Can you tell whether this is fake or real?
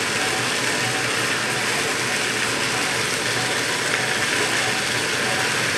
real